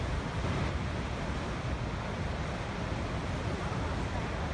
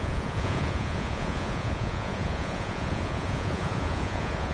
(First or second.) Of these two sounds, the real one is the first